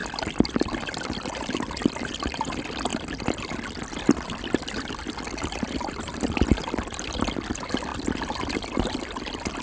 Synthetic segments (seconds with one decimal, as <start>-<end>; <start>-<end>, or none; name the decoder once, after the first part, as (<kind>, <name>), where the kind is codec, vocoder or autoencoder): none